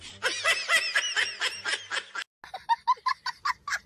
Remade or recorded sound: recorded